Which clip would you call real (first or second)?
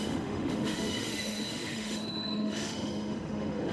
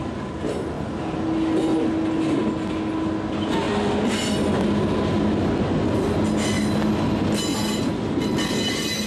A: second